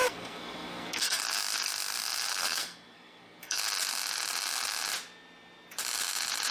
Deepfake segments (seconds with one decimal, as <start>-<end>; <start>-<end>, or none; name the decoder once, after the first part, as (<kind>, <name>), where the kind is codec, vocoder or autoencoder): 0.0-1.2 (codec, SNAC); 2.3-3.6

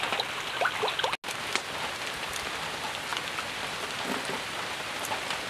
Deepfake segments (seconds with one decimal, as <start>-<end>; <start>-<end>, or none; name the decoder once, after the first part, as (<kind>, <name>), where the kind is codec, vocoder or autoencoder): none